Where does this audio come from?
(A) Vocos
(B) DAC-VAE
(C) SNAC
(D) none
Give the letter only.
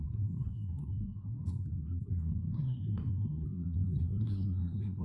C